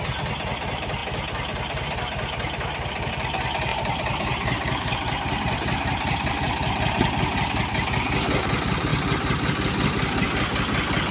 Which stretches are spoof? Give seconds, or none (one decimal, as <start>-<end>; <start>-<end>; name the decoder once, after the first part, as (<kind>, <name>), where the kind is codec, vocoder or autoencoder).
3.7-6.3 (vocoder, BigVGAN v2)